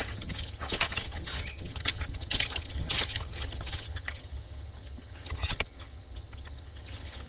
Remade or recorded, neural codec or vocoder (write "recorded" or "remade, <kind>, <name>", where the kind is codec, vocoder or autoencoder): remade, vocoder, HiFi-GAN